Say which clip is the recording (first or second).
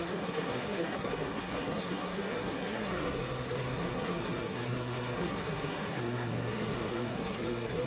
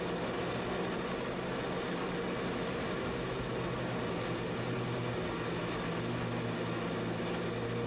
second